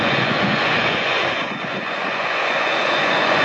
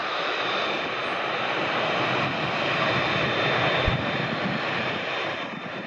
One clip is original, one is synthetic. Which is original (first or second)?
second